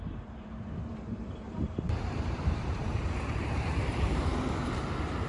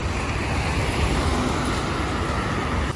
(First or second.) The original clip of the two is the second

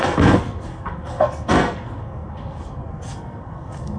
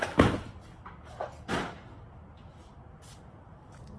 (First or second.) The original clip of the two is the second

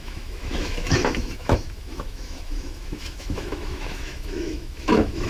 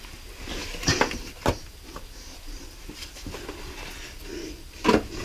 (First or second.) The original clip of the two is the second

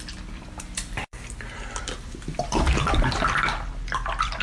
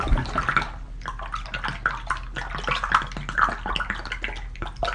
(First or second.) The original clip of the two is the second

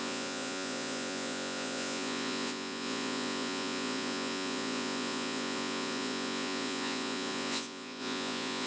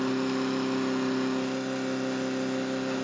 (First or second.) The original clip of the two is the second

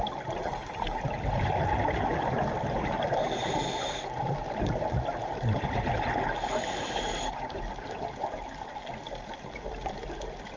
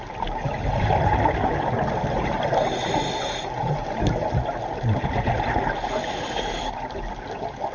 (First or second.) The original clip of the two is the second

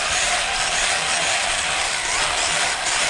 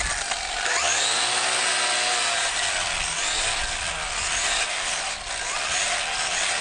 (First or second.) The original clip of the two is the second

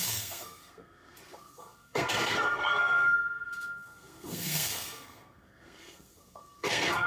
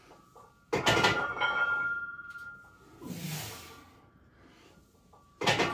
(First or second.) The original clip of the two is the second